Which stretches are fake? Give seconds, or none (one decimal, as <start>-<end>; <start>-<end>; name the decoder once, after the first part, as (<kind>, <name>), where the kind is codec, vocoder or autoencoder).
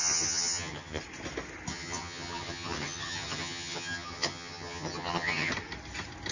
0.0-1.0 (vocoder, HiFi-GAN); 1.7-5.5